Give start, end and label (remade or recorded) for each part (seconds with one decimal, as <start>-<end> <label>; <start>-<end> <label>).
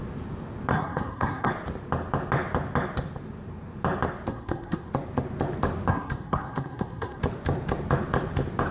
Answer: 0.0-0.7 recorded; 0.7-1.5 remade; 1.5-4.3 recorded; 4.3-4.9 remade; 4.9-5.9 recorded; 5.9-7.2 remade; 7.2-8.7 recorded